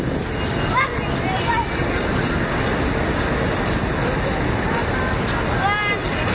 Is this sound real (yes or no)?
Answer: yes